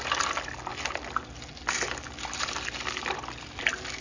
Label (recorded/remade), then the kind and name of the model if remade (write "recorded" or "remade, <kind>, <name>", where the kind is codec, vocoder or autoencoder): recorded